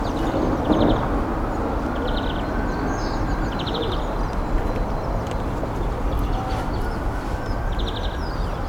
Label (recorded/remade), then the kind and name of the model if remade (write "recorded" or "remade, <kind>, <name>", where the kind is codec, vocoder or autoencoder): recorded